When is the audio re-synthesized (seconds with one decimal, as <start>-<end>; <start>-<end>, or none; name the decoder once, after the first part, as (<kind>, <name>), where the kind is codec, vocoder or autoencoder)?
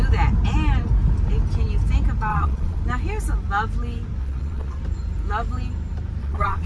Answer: 2.3-2.8 (vocoder, Vocos); 4.2-4.8; 6.2-6.7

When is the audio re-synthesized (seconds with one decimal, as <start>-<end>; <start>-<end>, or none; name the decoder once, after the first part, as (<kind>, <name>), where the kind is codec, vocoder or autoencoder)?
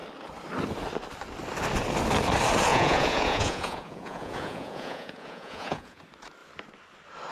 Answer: 2.7-6.0 (vocoder, Vocos)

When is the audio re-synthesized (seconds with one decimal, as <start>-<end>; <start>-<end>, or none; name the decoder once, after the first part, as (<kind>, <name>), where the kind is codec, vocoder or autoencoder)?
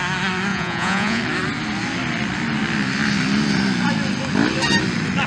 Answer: 0.5-1.2 (vocoder, Vocos)